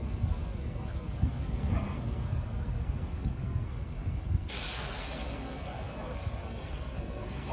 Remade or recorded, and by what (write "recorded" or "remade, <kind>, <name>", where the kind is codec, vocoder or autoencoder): remade, codec, SNAC